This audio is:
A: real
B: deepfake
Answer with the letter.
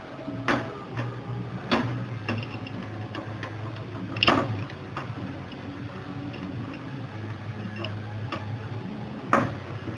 A